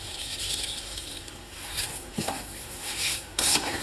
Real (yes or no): no